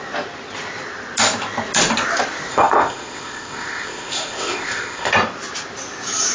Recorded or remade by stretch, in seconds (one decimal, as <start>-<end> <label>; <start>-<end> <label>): 0.0-2.5 recorded; 2.5-5.1 remade; 5.1-6.3 recorded